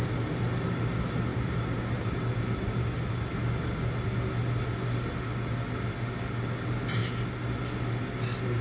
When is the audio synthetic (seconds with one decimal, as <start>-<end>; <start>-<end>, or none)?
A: 1.3-3.2